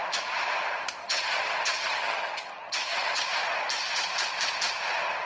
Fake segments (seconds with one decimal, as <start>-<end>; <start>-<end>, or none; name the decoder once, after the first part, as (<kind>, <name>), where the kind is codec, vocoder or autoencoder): 1.0-3.2 (vocoder, HiFi-GAN)